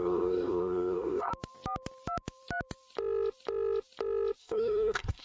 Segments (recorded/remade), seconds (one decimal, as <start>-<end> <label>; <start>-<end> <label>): 0.0-1.3 remade; 1.3-4.4 recorded; 4.4-5.2 remade